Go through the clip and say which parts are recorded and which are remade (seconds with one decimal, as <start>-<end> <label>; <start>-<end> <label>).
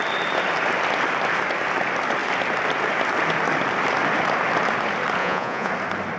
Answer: 0.0-5.2 recorded; 5.2-5.7 remade; 5.7-6.2 recorded